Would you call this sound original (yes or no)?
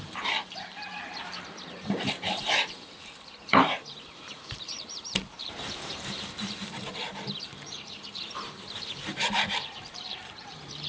no